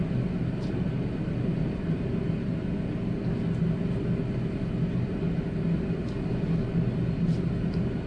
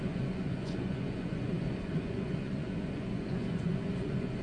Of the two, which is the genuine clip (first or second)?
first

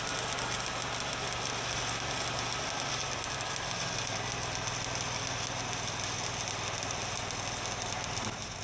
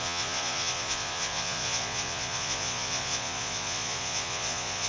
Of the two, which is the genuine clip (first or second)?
first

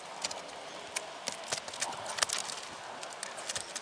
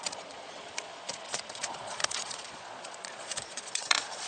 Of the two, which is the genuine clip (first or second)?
first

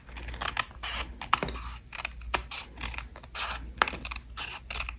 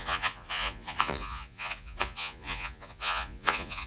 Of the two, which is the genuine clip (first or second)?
first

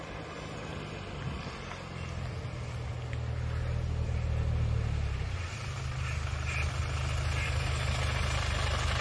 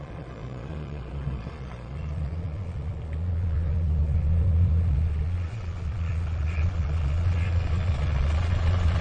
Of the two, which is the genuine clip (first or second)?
first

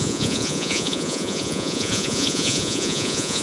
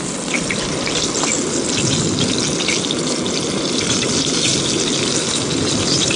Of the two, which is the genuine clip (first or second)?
second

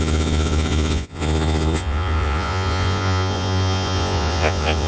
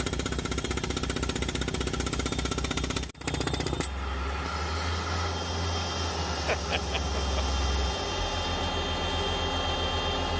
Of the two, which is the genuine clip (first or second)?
second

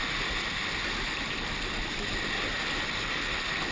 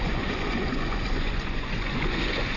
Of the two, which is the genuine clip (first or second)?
first